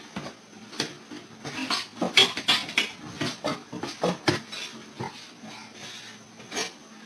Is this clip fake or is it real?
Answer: real